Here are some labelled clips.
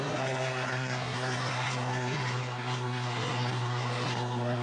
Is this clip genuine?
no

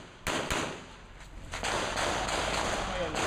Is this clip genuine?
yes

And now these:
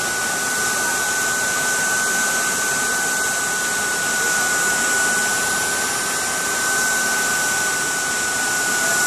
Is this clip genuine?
yes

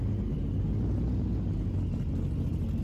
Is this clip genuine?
yes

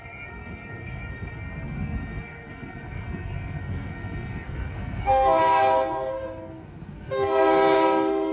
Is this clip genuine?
no